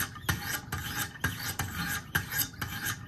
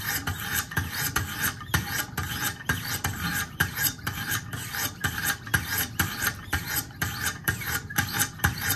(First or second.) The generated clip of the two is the second